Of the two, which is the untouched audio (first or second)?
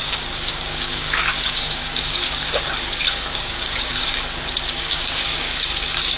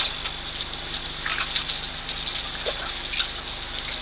second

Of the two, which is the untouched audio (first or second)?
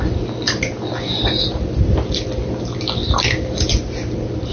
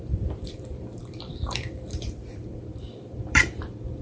first